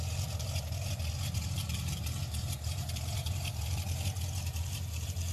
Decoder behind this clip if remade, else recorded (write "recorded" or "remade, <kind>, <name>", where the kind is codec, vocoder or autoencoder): remade, vocoder, BigVGAN v2